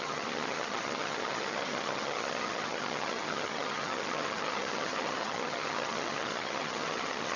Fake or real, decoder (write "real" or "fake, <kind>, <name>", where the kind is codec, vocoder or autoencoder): fake, vocoder, HiFi-GAN